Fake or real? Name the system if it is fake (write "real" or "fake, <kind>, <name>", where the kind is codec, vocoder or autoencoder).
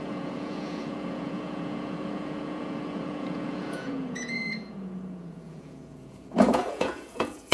fake, vocoder, Vocos